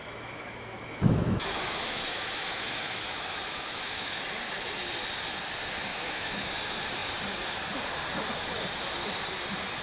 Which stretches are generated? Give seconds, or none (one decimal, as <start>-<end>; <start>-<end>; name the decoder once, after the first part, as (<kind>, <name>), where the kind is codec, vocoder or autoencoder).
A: 0.0-4.2 (autoencoder, DAC-VAE); 5.9-6.5